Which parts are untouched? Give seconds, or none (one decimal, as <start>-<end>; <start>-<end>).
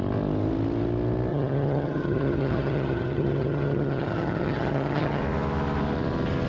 0.0-1.3; 5.2-6.5